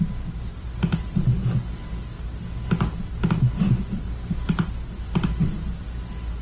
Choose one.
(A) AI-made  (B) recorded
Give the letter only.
B